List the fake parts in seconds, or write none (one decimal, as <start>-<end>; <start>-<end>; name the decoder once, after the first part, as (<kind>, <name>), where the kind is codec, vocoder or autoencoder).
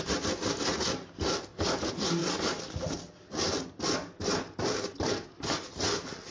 none